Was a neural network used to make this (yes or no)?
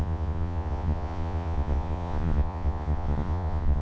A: yes